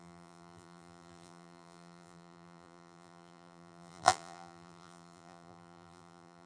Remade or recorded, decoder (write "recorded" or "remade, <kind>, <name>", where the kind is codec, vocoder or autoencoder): remade, vocoder, BigVGAN v2